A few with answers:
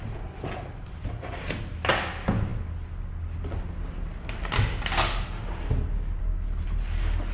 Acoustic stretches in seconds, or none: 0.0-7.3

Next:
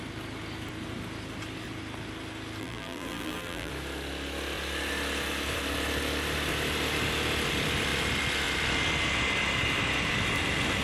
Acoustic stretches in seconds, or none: 0.0-2.6; 3.7-10.8